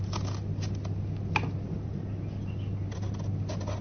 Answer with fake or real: real